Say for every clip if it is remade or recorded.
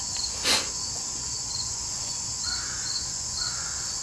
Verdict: remade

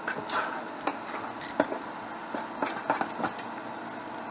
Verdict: recorded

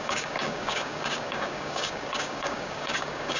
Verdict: remade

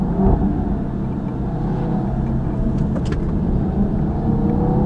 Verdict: recorded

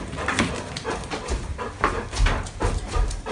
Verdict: recorded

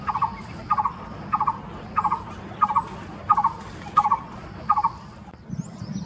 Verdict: recorded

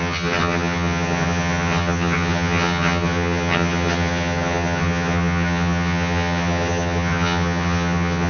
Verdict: remade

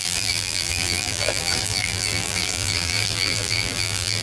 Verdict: remade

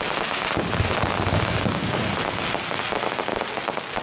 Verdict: recorded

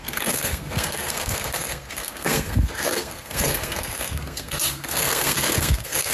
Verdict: remade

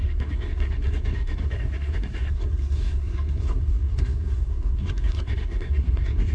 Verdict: remade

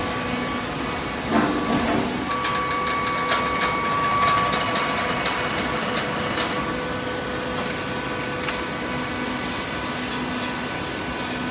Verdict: recorded